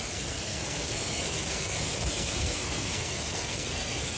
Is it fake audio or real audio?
fake